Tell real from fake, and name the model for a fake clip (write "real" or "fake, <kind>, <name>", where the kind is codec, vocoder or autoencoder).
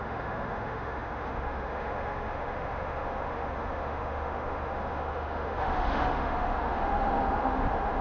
fake, autoencoder, DAC-VAE